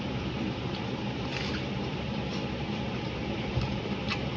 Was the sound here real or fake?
fake